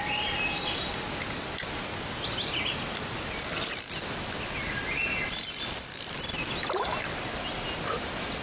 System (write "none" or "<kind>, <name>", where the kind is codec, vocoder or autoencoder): none